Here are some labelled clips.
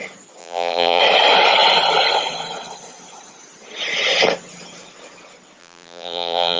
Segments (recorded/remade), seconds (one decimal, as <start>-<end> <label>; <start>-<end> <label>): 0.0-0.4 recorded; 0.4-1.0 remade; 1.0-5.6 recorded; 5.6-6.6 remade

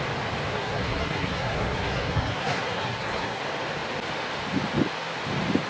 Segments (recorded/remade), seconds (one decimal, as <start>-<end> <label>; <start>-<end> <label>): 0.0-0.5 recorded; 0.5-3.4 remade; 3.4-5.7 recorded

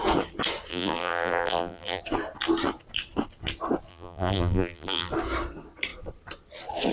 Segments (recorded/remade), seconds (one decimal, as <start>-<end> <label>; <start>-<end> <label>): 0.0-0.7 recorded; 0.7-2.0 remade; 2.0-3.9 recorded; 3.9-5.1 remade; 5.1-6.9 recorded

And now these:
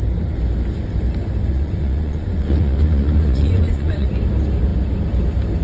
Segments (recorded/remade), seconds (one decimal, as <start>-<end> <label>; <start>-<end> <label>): 0.0-1.5 recorded; 1.5-4.1 remade; 4.1-5.6 recorded